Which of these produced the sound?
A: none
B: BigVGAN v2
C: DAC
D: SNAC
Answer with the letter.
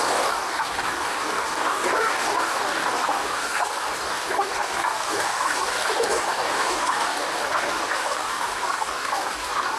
C